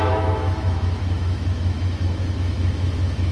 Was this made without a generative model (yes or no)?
no